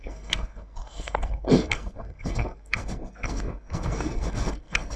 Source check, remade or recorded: remade